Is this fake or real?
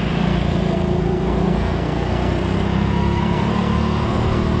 fake